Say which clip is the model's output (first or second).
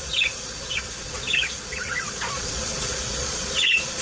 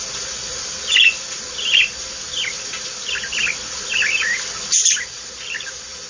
first